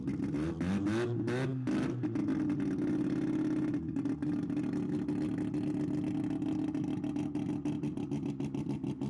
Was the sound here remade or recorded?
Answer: recorded